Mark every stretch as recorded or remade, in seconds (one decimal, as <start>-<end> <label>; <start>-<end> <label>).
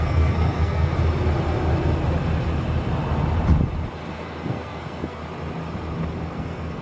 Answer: 0.0-0.9 remade; 0.9-4.1 recorded; 4.1-5.2 remade; 5.2-6.2 recorded; 6.2-6.8 remade